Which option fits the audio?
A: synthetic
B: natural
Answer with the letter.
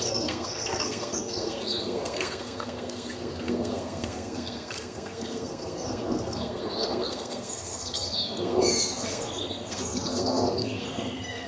A